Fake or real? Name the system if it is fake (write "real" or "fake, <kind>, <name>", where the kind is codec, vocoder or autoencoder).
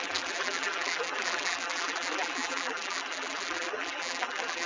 fake, vocoder, BigVGAN v2